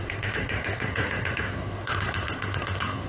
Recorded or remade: remade